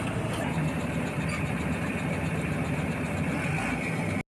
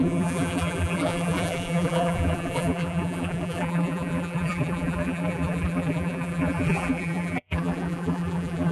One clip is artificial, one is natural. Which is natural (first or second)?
first